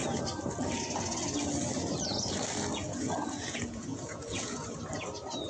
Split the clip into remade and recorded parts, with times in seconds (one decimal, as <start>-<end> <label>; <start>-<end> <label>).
0.0-2.8 recorded; 2.8-4.8 remade; 4.8-5.5 recorded